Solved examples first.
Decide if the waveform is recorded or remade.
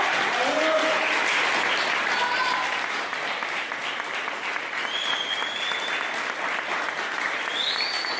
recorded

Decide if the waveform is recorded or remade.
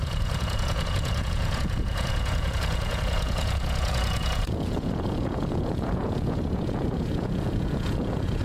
remade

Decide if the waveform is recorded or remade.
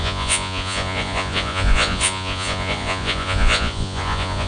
remade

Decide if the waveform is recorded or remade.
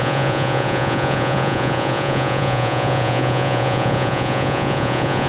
remade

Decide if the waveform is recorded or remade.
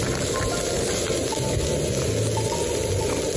recorded